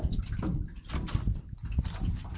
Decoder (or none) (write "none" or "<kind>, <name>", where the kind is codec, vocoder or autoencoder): none